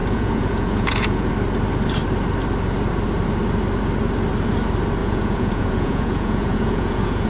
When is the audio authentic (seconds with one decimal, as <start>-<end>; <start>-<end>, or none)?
1.3-5.0